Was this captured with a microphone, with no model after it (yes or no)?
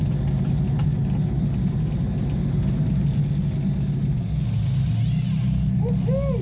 yes